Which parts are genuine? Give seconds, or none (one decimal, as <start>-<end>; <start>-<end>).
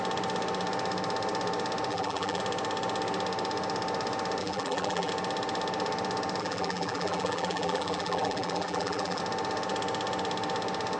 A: 0.0-1.9; 2.4-4.4; 5.1-6.4; 9.2-11.0